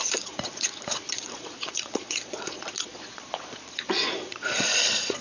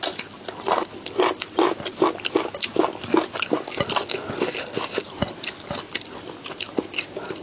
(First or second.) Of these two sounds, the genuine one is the second